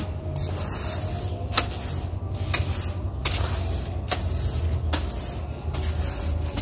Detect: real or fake real